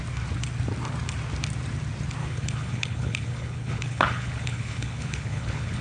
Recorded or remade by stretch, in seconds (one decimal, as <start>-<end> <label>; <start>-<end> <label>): 0.0-2.2 recorded; 2.2-5.8 remade